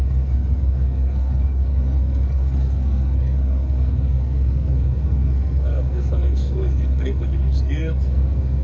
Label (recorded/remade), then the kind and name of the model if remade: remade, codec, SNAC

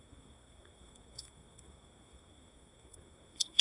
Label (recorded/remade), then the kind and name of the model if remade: remade, codec, SNAC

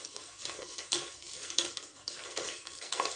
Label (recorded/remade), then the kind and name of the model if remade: remade, codec, SNAC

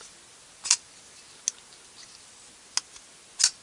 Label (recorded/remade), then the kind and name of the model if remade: recorded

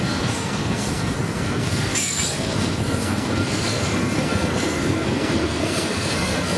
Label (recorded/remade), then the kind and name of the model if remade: remade, codec, SNAC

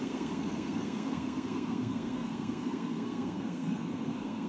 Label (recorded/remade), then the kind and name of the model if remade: remade, codec, SNAC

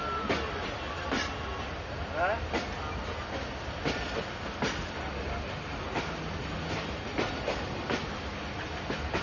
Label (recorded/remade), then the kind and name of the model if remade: recorded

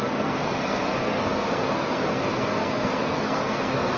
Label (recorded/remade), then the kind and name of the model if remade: remade, codec, SNAC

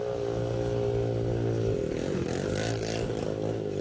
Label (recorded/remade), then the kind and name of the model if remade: recorded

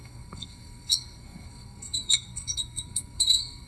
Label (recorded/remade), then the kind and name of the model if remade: remade, codec, SNAC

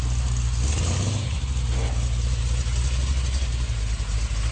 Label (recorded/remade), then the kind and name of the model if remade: recorded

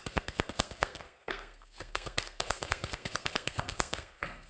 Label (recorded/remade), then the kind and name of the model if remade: remade, codec, SNAC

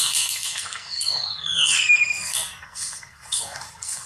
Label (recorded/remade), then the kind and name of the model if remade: remade, codec, SNAC